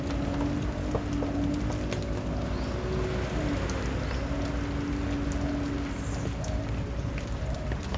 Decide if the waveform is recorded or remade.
recorded